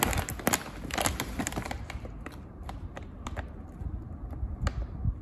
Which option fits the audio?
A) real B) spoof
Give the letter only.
A